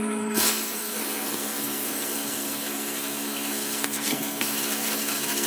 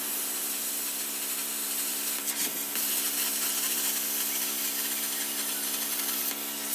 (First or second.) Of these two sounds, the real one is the second